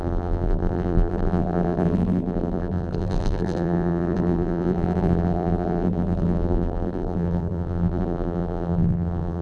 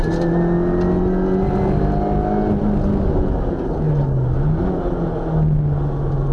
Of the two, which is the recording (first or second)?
second